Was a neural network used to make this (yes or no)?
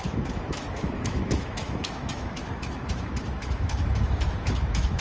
yes